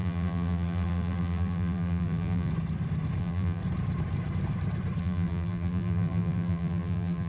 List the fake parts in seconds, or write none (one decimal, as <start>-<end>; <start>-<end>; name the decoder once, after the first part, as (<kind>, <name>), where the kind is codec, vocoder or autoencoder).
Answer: 0.0-2.5 (vocoder, BigVGAN v2); 3.2-3.6; 5.0-7.3